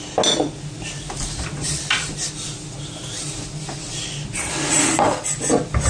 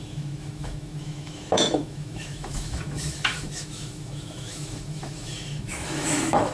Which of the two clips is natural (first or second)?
first